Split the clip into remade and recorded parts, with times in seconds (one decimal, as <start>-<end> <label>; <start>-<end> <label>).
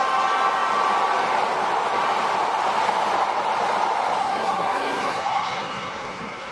0.0-4.2 recorded; 4.2-6.5 remade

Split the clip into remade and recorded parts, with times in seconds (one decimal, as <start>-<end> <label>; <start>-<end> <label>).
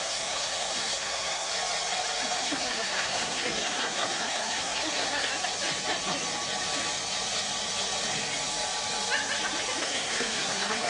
0.0-1.5 remade; 1.5-2.4 recorded; 2.4-5.3 remade; 5.3-9.8 recorded; 9.8-10.9 remade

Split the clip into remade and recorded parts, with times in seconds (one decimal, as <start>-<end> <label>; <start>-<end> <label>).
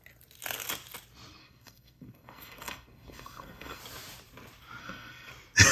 0.0-1.4 recorded; 1.4-3.8 remade; 3.8-4.8 recorded; 4.8-5.3 remade; 5.3-5.7 recorded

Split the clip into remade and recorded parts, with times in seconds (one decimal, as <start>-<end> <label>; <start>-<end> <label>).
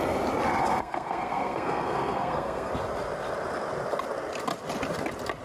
0.0-0.6 recorded; 0.6-2.7 remade; 2.7-5.4 recorded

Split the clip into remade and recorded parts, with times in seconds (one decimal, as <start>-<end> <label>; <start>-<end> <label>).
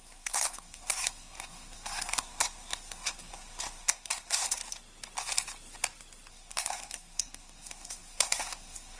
0.0-4.6 remade; 4.6-6.3 recorded; 6.3-9.0 remade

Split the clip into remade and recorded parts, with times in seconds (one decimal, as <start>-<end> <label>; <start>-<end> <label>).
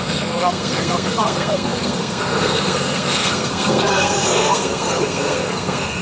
0.0-6.0 remade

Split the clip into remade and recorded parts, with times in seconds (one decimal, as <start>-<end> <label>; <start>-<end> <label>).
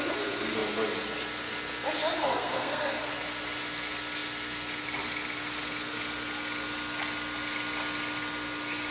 0.0-2.2 recorded; 2.2-3.1 remade; 3.1-8.9 recorded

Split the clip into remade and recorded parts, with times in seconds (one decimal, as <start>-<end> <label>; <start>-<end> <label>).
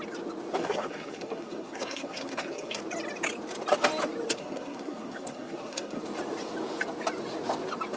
0.0-0.6 recorded; 0.6-2.8 remade; 2.8-4.3 recorded; 4.3-6.0 remade; 6.0-8.0 recorded